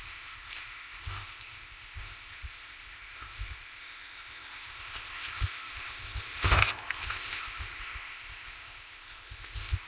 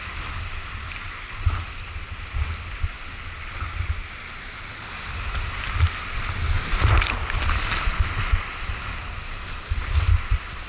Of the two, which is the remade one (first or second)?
first